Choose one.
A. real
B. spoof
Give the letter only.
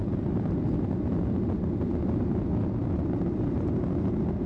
A